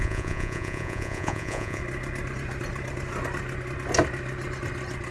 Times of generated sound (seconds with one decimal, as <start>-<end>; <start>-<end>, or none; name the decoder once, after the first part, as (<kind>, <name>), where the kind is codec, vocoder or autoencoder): 0.0-1.8 (vocoder, Vocos)